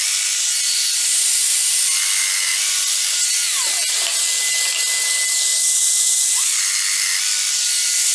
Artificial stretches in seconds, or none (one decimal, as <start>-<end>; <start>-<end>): none